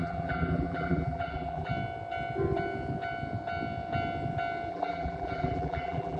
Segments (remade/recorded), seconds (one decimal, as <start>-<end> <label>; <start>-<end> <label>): 0.0-1.7 remade; 1.7-4.7 recorded; 4.7-6.2 remade